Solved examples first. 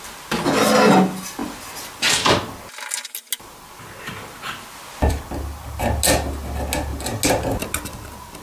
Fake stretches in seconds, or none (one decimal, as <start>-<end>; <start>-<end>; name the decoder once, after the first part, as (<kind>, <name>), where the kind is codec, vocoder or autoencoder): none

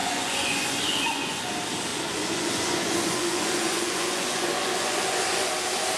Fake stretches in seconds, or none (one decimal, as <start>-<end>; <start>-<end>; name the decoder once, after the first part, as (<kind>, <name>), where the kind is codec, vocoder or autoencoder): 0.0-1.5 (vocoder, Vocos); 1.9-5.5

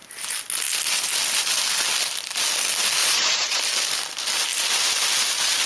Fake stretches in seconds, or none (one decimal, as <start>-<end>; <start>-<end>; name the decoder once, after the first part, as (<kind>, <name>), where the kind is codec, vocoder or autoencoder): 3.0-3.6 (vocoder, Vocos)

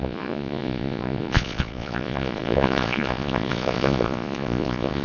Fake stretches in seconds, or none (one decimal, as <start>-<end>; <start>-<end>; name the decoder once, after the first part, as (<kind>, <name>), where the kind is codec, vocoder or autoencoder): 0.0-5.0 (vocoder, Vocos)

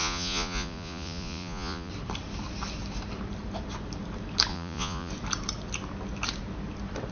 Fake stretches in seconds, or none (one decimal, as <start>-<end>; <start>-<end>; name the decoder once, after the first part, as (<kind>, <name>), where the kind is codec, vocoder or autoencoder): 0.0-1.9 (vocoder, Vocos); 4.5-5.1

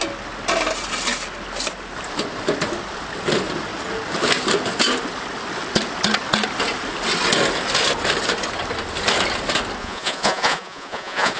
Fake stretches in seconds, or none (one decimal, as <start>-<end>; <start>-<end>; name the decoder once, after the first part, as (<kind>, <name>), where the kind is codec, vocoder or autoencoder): 9.8-11.4 (vocoder, Vocos)